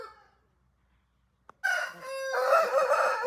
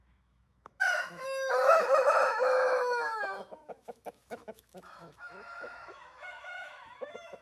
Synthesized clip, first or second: second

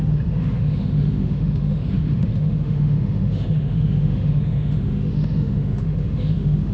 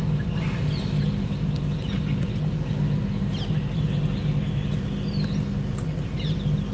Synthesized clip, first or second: first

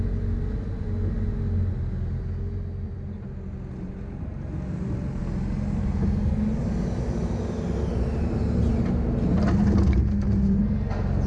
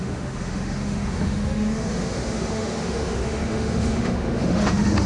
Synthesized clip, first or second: second